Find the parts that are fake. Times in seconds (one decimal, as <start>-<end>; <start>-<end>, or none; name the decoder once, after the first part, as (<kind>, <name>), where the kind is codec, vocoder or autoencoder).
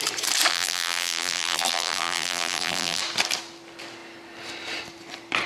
0.5-3.0 (vocoder, BigVGAN v2)